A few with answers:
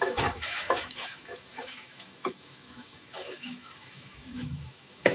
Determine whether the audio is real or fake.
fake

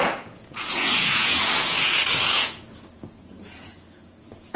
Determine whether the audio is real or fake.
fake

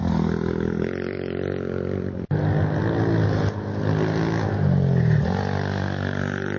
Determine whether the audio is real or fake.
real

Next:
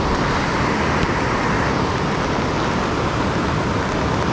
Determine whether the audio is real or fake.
real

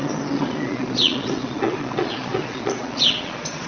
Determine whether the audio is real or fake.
fake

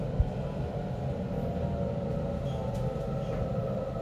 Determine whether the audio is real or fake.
real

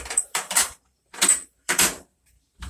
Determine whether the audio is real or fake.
fake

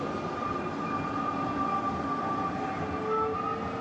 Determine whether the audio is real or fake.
real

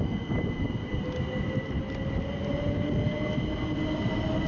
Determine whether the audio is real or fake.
real